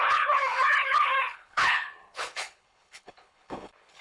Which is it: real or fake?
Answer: fake